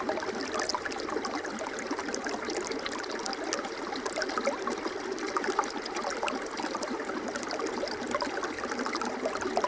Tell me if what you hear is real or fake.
real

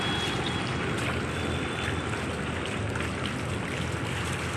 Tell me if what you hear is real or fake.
real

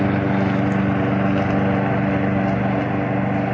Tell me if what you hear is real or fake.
real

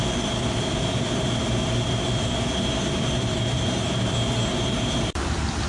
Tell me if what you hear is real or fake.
fake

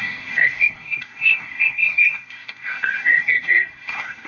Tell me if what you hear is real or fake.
fake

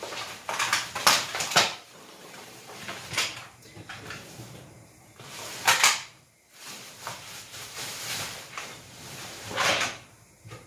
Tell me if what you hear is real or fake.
fake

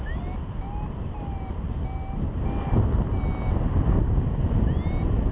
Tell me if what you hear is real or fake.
real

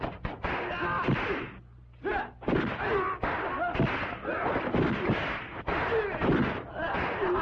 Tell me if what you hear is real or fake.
real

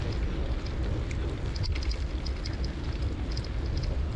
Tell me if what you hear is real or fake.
real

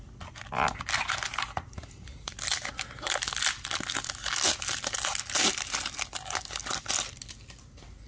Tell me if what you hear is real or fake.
real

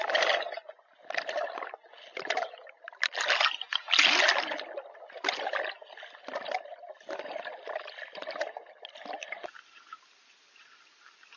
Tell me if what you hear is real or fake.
real